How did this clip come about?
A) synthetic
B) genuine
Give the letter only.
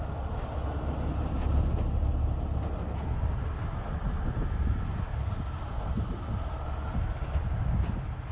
B